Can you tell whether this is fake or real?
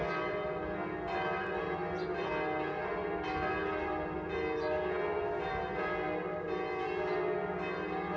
real